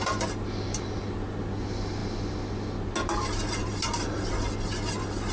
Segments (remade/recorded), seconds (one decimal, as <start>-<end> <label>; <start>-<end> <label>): 0.0-5.3 recorded